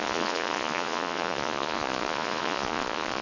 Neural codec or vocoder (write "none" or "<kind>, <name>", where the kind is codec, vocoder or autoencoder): vocoder, Vocos